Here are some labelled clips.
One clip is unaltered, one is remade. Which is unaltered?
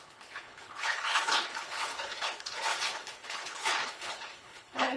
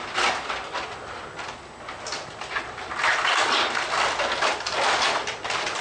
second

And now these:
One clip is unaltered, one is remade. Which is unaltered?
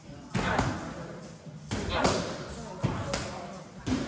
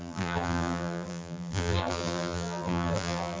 first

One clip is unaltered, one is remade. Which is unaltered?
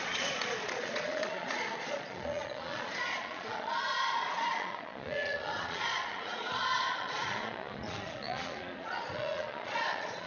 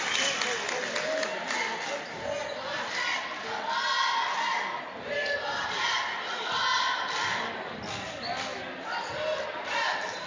second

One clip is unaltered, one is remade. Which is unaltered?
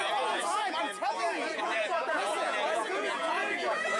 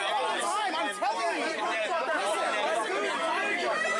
second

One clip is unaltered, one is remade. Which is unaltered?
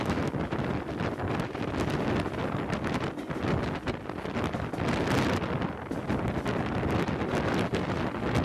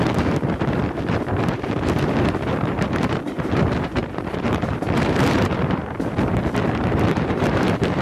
first